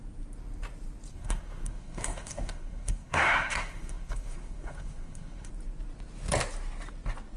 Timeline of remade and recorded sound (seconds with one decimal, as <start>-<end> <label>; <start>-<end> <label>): 0.0-1.1 recorded; 1.1-5.5 remade; 5.5-7.4 recorded